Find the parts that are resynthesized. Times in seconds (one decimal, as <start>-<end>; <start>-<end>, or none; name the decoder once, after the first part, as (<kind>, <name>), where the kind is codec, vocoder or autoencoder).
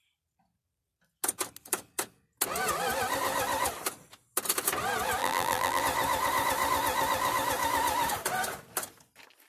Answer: 5.2-5.8 (vocoder, BigVGAN v2)